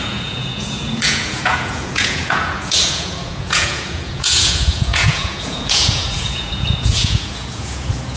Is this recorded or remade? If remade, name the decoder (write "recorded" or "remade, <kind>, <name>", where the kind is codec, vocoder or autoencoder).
remade, vocoder, Vocos